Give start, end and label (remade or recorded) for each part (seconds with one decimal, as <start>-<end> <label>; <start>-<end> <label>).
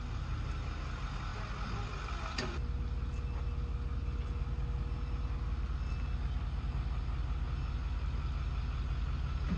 0.0-9.6 recorded